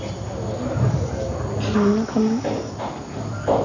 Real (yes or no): yes